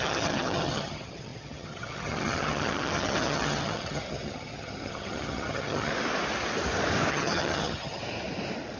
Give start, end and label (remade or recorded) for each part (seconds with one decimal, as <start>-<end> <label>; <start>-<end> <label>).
0.0-5.9 remade; 5.9-7.1 recorded; 7.1-8.0 remade; 8.0-8.8 recorded